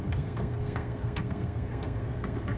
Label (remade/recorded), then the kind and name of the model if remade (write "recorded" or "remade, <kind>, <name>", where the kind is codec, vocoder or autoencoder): remade, codec, SNAC